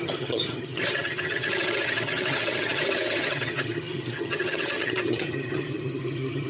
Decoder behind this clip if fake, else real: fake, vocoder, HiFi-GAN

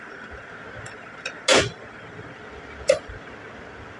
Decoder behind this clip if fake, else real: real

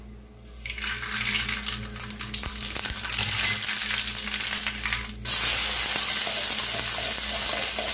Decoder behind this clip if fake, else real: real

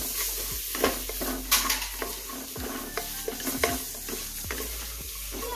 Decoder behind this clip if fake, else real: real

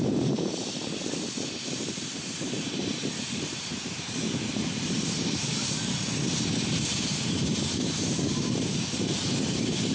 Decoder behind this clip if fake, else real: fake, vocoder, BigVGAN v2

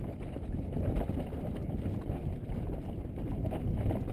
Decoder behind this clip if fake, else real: real